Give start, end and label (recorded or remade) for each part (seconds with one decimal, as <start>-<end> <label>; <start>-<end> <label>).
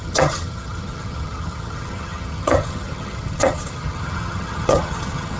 0.0-5.4 remade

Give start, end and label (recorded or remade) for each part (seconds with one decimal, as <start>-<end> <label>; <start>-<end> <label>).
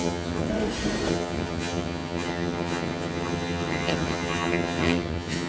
0.0-0.5 remade; 0.5-1.1 recorded; 1.1-5.5 remade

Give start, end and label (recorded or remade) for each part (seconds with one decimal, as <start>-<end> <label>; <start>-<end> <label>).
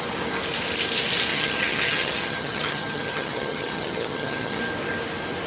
0.0-1.3 recorded; 1.3-4.6 remade; 4.6-5.5 recorded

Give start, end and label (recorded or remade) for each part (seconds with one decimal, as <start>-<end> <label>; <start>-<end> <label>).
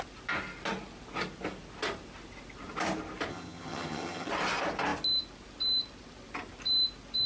0.0-3.3 recorded; 3.3-4.3 remade; 4.3-7.3 recorded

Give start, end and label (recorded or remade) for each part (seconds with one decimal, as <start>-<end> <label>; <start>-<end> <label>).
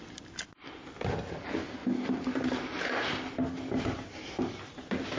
0.0-5.2 recorded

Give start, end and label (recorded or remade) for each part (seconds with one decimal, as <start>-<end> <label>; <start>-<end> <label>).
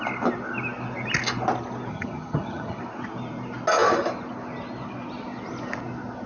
0.0-1.9 recorded; 1.9-2.8 remade; 2.8-6.3 recorded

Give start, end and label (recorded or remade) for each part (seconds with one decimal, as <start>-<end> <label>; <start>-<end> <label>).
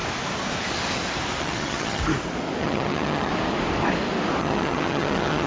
0.0-1.4 recorded; 1.4-2.0 remade; 2.0-2.6 recorded; 2.6-3.3 remade; 3.3-4.4 recorded; 4.4-5.5 remade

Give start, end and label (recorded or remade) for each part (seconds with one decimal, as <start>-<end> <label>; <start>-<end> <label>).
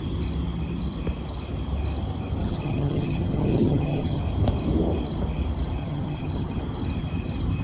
0.0-2.4 recorded; 2.4-4.2 remade; 4.2-5.8 recorded; 5.8-6.6 remade; 6.6-7.6 recorded